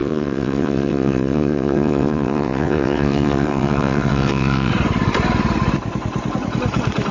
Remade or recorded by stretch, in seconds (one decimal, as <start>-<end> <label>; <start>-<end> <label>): 0.0-4.7 remade; 4.7-7.1 recorded